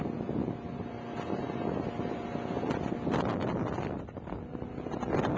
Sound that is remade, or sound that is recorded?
recorded